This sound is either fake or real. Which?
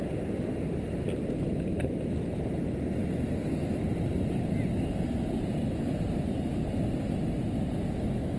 real